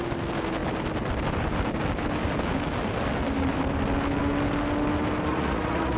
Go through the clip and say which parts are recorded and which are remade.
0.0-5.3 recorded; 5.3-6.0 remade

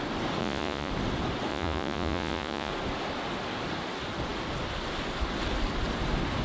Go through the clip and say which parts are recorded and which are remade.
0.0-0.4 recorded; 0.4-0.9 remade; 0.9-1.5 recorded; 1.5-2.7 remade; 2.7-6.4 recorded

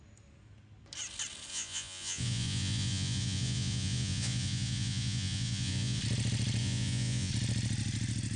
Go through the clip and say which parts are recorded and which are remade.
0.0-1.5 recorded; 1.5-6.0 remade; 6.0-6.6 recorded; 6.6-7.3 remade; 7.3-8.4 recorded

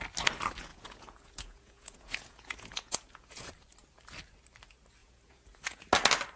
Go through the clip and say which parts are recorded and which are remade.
0.0-0.7 recorded; 0.7-3.5 remade; 3.5-5.0 recorded; 5.0-5.8 remade; 5.8-6.4 recorded

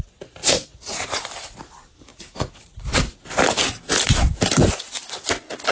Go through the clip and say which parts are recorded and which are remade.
0.0-0.4 recorded; 0.4-1.1 remade; 1.1-2.1 recorded; 2.1-3.4 remade; 3.4-5.7 recorded

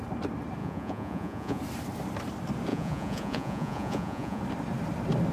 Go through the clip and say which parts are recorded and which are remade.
0.0-0.6 recorded; 0.6-1.6 remade; 1.6-2.7 recorded; 2.7-4.4 remade; 4.4-5.3 recorded